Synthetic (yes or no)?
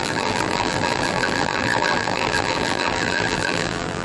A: yes